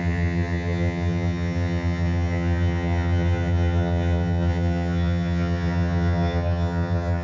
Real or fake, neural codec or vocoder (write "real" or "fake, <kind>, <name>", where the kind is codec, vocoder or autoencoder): fake, vocoder, HiFi-GAN